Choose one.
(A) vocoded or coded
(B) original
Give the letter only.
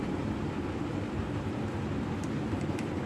A